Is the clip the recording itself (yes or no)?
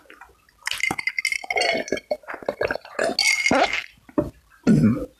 yes